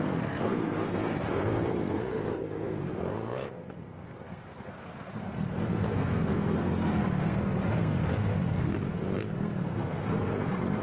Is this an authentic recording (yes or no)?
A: no